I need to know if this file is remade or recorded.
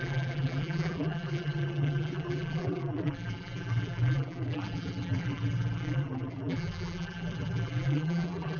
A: remade